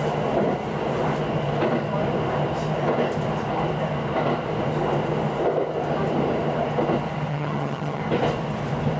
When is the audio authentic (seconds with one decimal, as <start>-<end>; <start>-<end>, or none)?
0.0-7.3; 8.0-9.0